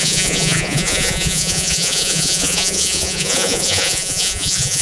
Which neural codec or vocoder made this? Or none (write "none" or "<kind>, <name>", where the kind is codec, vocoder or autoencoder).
vocoder, Vocos